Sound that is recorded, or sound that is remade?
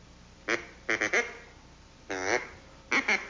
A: recorded